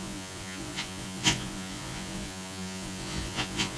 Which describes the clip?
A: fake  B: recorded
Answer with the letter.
A